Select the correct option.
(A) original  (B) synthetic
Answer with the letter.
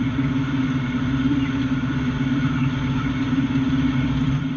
B